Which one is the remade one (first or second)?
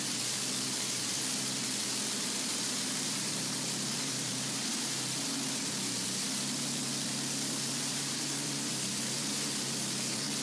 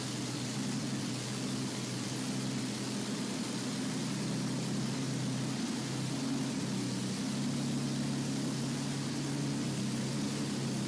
first